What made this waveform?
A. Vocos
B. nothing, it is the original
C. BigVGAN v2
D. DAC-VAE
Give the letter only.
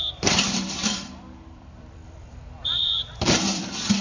C